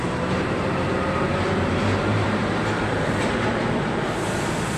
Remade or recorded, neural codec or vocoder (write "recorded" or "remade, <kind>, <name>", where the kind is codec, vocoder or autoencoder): remade, vocoder, BigVGAN v2